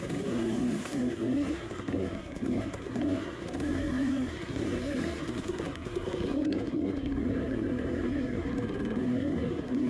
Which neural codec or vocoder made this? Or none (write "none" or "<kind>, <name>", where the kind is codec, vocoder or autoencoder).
codec, SNAC